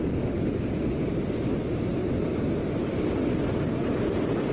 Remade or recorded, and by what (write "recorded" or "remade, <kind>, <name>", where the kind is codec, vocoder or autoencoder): recorded